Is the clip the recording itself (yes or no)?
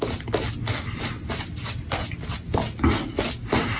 yes